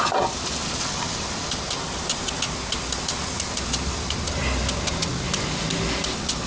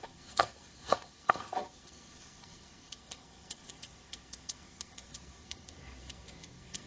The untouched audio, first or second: first